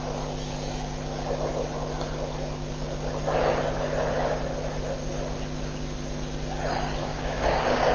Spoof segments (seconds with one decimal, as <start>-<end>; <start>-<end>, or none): 7.0-7.9